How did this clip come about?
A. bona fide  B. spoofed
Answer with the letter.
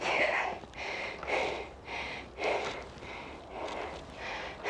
A